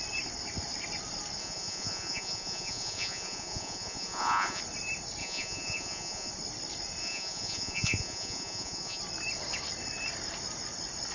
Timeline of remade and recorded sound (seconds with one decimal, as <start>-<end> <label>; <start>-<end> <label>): 0.0-1.4 recorded; 1.4-4.6 remade; 4.6-5.2 recorded; 5.2-6.3 remade; 6.3-7.0 recorded; 7.0-9.0 remade; 9.0-11.1 recorded